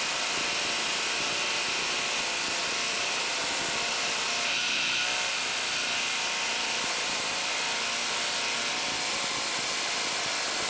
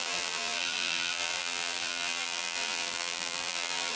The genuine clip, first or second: first